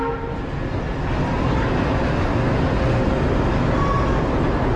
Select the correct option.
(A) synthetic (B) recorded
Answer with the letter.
B